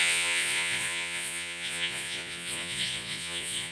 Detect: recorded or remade remade